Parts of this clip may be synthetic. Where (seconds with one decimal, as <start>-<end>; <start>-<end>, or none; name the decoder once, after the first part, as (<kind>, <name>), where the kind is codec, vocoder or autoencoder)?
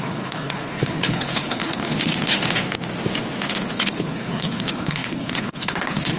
0.0-1.8 (codec, HILCodec); 3.5-6.2